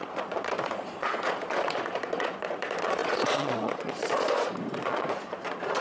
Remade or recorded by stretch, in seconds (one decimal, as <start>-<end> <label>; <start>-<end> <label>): 0.0-5.8 remade